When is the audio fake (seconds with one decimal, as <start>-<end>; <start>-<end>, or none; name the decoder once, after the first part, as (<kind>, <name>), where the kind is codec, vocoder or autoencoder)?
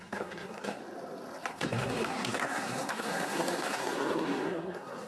0.0-0.8 (codec, SNAC); 1.5-5.1